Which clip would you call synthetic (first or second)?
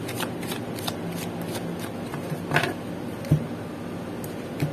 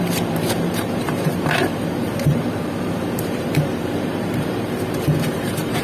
second